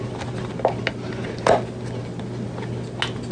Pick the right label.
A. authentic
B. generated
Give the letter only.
A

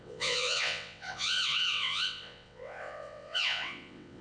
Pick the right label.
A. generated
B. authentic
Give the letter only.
A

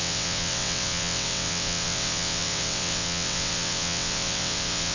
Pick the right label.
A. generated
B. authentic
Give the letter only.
A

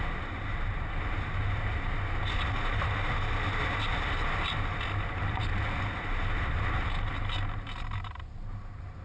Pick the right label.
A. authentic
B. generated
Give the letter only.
A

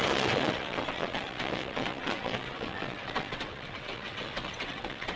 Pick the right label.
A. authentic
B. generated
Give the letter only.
B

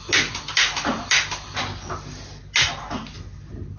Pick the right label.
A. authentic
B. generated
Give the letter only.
A